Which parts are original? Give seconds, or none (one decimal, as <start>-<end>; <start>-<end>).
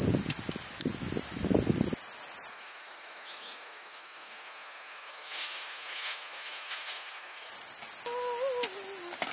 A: 0.0-2.5; 7.5-9.3